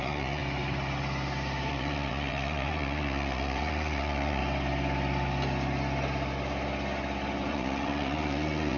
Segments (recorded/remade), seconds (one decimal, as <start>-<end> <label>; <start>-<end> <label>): 0.0-0.4 remade; 0.4-1.7 recorded; 1.7-4.4 remade; 4.4-7.5 recorded; 7.5-8.8 remade